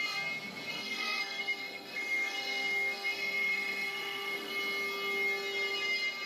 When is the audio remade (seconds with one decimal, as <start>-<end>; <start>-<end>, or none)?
0.7-4.5